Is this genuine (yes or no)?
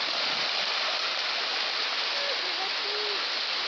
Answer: yes